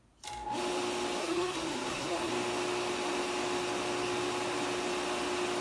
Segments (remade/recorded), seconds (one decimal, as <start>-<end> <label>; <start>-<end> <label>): 0.0-1.2 recorded; 1.2-2.3 remade; 2.3-5.6 recorded